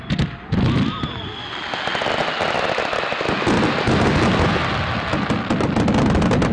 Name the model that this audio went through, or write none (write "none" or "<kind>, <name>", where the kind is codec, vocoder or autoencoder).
none